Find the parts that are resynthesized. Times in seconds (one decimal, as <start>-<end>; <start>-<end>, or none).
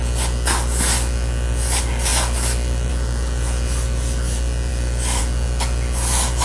4.7-5.2